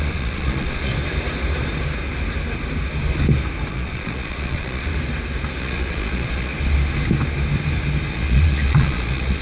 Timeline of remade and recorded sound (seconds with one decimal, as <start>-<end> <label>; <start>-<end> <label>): 0.0-0.9 remade; 0.9-3.7 recorded; 3.7-4.9 remade; 4.9-5.6 recorded; 5.6-6.5 remade; 6.5-8.1 recorded; 8.1-9.4 remade